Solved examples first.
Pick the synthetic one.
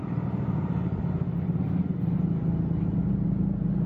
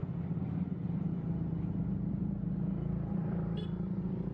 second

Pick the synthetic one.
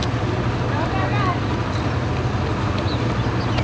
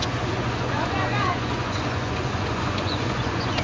second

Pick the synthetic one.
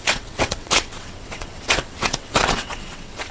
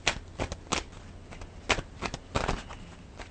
first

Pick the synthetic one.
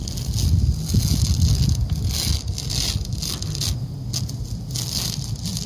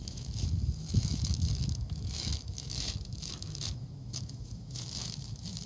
second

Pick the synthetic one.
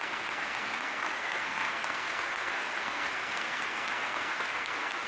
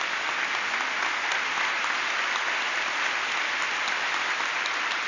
first